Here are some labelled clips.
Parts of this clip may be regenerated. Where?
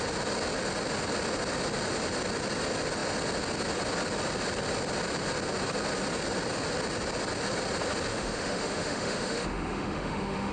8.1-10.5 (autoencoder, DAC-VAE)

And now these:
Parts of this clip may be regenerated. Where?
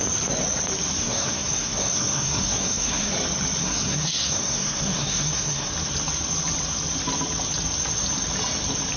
1.0-3.1 (codec, SNAC); 3.6-5.7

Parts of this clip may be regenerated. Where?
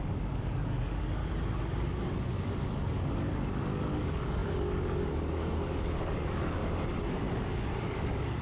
0.0-1.2 (codec, DAC); 1.9-6.6; 7.2-8.4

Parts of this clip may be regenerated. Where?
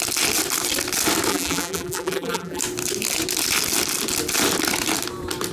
1.3-2.6 (vocoder, BigVGAN v2)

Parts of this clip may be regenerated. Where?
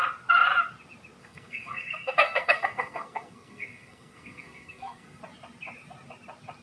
1.2-5.2 (codec, SNAC)